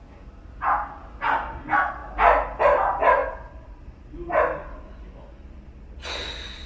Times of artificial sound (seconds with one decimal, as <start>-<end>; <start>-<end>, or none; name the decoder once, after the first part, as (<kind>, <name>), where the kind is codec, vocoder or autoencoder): 3.2-3.8 (vocoder, BigVGAN v2)